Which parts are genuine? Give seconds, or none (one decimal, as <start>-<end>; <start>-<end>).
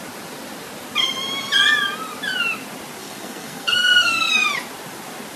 0.0-3.0; 4.5-5.4